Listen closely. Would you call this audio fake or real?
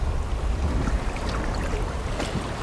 real